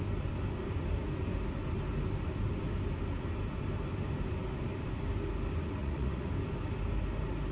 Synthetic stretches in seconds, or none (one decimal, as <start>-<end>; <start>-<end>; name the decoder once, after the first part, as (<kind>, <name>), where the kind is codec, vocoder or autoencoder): 5.8-6.3 (vocoder, Vocos)